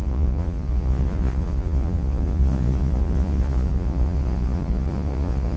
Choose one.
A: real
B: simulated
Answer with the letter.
B